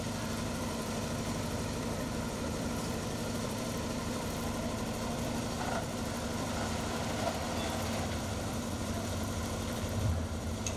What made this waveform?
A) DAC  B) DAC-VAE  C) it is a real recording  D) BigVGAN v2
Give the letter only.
D